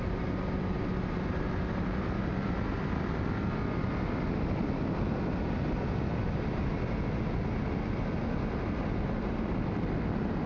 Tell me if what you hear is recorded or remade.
recorded